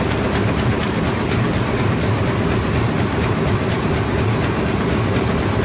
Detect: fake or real fake